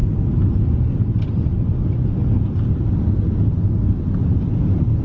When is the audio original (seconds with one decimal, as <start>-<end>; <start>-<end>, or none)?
0.0-5.0